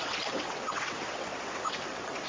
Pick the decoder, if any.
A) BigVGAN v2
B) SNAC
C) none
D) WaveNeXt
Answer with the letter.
D